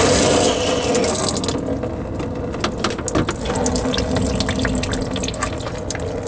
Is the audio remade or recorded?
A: recorded